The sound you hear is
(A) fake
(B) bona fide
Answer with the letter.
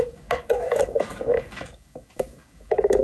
A